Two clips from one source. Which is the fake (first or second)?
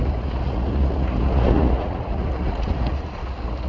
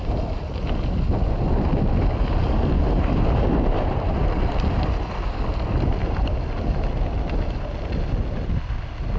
first